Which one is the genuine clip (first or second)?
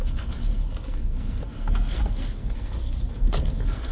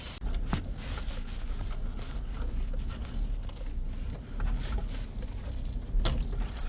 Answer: second